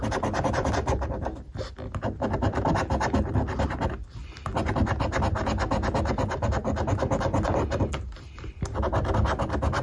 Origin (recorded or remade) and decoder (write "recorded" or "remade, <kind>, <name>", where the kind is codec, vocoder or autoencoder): recorded